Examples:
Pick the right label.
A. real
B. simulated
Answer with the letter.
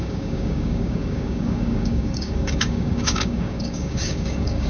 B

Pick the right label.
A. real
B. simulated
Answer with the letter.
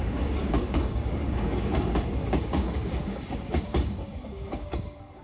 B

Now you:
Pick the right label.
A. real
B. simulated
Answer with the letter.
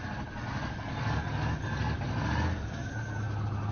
A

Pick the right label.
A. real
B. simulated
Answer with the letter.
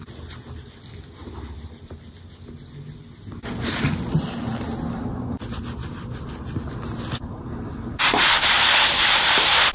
A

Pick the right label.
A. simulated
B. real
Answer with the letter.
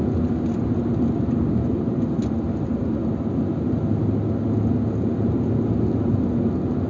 B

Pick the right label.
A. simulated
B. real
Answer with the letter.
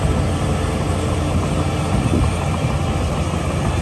B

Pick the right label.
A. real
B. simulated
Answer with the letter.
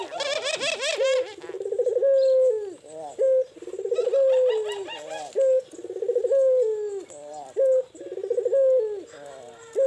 A